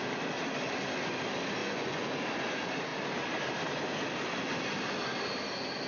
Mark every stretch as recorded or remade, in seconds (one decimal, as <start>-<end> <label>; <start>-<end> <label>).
0.0-1.6 recorded; 1.6-2.1 remade; 2.1-5.9 recorded